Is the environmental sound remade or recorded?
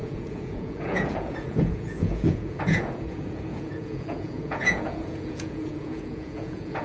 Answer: remade